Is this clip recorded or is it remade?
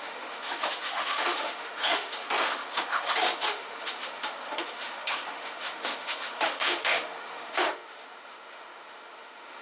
remade